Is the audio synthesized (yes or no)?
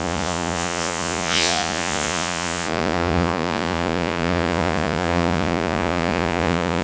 yes